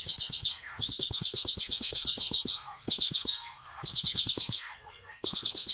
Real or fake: fake